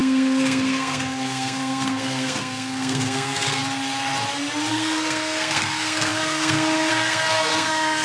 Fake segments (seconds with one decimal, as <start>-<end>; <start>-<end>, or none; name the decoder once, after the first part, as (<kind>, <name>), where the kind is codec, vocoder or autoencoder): 0.0-3.6 (codec, SNAC); 4.7-8.0